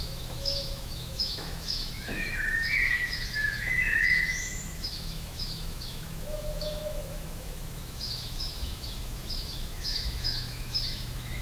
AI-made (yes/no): yes